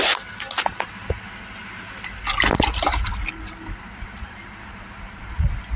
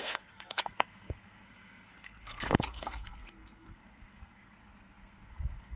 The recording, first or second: first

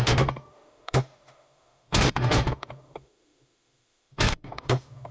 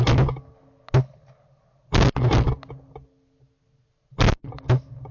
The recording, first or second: second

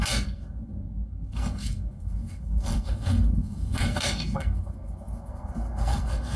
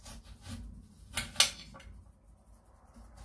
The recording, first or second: second